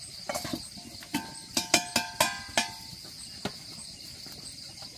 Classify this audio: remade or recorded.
recorded